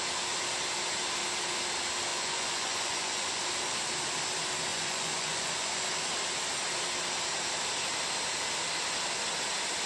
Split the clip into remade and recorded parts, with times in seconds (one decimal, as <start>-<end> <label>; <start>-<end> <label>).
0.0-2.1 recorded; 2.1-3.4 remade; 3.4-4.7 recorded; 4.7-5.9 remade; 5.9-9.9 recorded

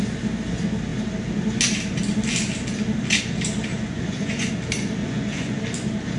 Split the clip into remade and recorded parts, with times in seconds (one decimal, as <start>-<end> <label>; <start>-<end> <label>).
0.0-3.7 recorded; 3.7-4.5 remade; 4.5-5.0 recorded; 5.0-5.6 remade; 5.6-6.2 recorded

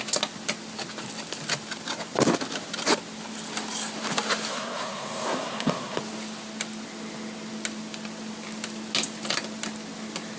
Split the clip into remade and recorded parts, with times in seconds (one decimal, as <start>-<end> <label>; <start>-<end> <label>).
0.0-4.5 recorded; 4.5-6.0 remade; 6.0-10.4 recorded

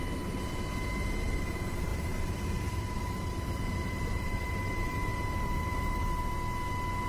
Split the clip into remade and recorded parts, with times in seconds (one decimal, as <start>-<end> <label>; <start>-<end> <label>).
0.0-1.9 recorded; 1.9-6.2 remade; 6.2-7.1 recorded

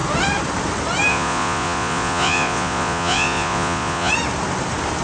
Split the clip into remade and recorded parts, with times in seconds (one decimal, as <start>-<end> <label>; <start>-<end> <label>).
0.0-1.1 recorded; 1.1-4.1 remade; 4.1-5.0 recorded

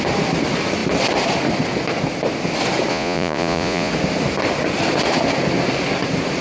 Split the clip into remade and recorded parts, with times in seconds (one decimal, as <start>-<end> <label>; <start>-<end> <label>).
0.0-2.9 recorded; 2.9-3.9 remade; 3.9-6.4 recorded

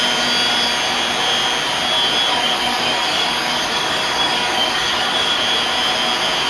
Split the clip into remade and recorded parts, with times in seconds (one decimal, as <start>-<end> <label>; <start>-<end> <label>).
0.0-2.3 recorded; 2.3-5.4 remade; 5.4-6.5 recorded